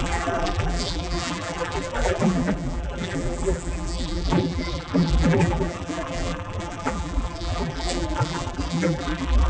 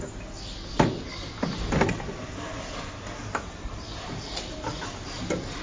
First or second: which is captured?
second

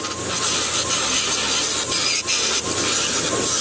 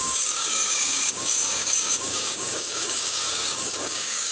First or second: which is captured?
first